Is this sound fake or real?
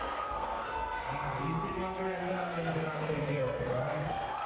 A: fake